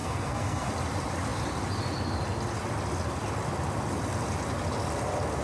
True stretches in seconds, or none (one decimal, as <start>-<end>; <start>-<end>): 0.7-5.4